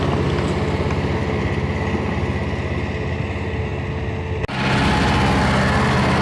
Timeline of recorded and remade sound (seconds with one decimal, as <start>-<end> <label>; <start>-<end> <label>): 0.0-6.2 recorded